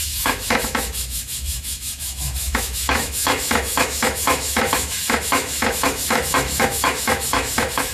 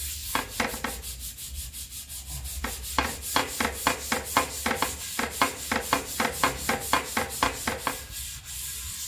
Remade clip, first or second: first